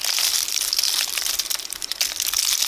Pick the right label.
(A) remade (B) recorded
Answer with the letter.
B